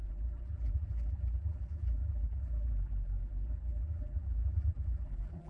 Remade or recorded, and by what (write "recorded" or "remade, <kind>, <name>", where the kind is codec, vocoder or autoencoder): remade, vocoder, BigVGAN v2